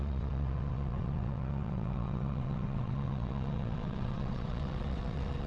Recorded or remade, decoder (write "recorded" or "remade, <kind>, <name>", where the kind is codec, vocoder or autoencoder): remade, vocoder, WaveNeXt